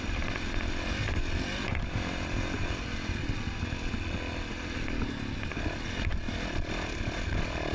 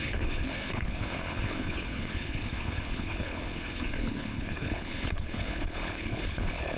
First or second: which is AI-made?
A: second